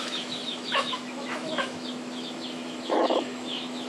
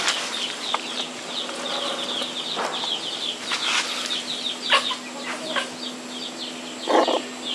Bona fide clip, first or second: second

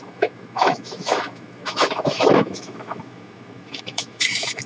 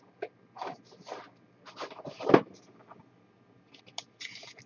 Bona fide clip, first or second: second